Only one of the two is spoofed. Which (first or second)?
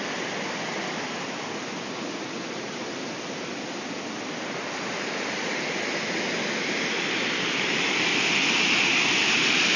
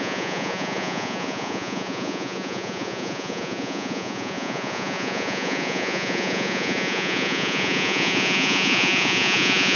second